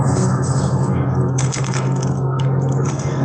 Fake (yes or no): yes